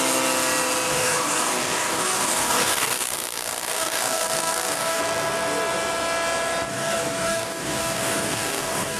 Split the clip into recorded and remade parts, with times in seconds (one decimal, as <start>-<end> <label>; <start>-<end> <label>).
0.0-0.9 recorded; 0.9-5.0 remade; 5.0-6.7 recorded; 6.7-9.0 remade